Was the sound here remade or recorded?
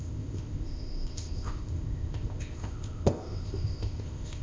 remade